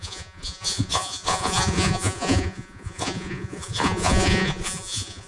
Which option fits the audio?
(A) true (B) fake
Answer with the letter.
B